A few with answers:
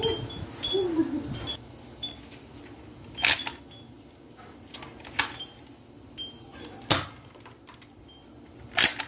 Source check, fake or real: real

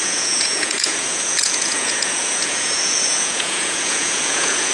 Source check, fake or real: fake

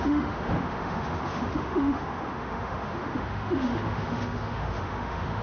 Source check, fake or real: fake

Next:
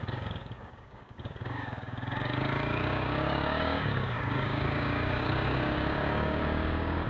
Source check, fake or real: fake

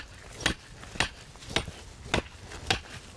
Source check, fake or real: real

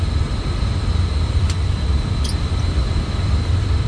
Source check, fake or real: fake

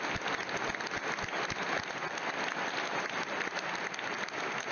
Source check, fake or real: real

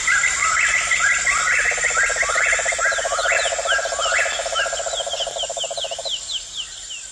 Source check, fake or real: real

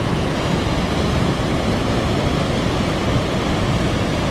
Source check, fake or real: real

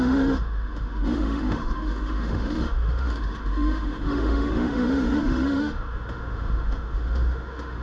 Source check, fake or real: fake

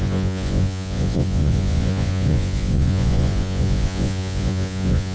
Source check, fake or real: fake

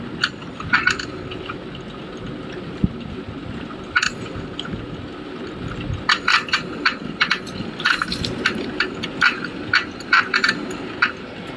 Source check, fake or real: real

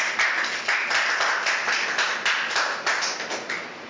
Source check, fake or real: real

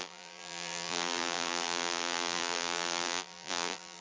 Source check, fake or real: fake